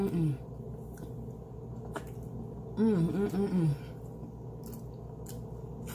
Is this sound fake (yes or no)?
no